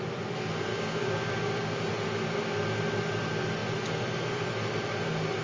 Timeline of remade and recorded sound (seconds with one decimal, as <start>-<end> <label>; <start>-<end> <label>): 0.0-0.7 recorded; 0.7-1.9 remade; 1.9-5.4 recorded

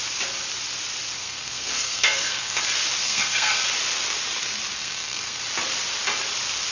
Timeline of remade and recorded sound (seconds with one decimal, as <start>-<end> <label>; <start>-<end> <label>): 0.0-1.2 recorded; 1.2-2.6 remade; 2.6-3.0 recorded; 3.0-3.6 remade; 3.6-4.8 recorded; 4.8-5.4 remade; 5.4-6.7 recorded

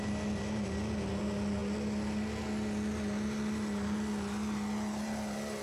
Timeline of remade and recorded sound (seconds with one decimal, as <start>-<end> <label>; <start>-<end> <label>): 0.0-5.6 recorded

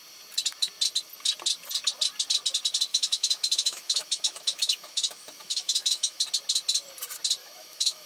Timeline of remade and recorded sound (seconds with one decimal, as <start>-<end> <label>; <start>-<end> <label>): 0.0-2.9 recorded; 2.9-6.2 remade; 6.2-7.4 recorded; 7.4-8.1 remade

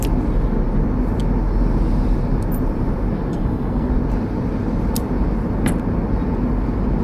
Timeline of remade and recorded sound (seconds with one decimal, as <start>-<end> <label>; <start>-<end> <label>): 0.0-3.3 recorded; 3.3-3.9 remade; 3.9-7.0 recorded

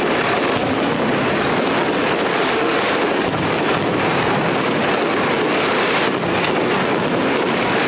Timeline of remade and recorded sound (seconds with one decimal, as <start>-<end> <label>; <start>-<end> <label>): 0.0-2.3 recorded; 2.3-2.9 remade; 2.9-7.9 recorded

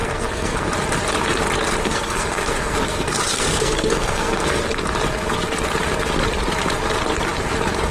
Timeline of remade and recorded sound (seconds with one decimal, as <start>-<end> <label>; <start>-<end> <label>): 0.0-0.7 remade; 0.7-1.8 recorded; 1.8-4.6 remade; 4.6-7.9 recorded